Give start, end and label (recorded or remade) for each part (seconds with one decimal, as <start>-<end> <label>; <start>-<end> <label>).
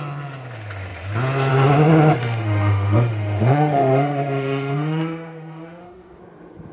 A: 0.0-2.2 recorded; 2.2-6.2 remade; 6.2-6.7 recorded